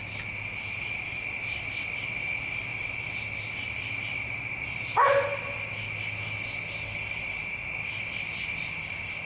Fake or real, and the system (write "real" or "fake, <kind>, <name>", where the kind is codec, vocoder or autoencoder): real